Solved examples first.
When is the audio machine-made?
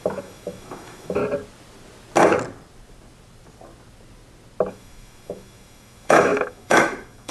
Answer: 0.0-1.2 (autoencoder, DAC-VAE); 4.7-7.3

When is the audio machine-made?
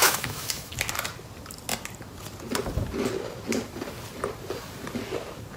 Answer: 0.0-0.7 (autoencoder, DAC-VAE)